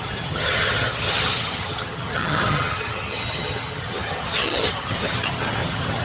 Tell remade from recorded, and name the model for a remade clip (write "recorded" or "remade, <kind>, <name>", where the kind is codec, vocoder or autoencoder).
remade, vocoder, HiFi-GAN